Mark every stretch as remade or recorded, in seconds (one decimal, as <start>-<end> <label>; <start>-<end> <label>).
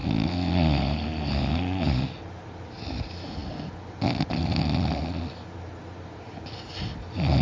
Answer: 0.0-1.4 remade; 1.4-7.4 recorded